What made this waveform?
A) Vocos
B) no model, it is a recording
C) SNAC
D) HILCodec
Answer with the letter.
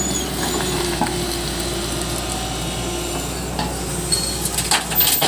B